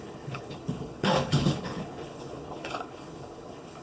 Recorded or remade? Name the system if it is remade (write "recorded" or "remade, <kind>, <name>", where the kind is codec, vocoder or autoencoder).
remade, codec, HILCodec